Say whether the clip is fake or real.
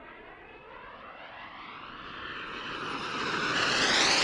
real